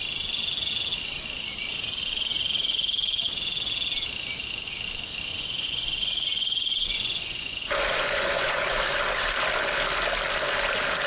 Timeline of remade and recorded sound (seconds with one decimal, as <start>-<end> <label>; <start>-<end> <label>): 0.0-5.3 recorded; 5.3-8.8 remade; 8.8-11.1 recorded